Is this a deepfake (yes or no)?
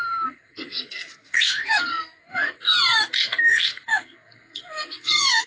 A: yes